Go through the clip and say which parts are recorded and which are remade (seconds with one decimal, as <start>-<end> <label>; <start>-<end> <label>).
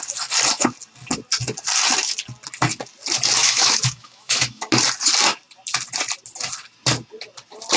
0.0-3.4 recorded; 3.4-4.7 remade; 4.7-7.8 recorded